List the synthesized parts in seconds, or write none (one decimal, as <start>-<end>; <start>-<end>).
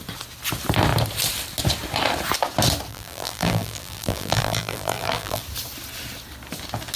2.9-5.4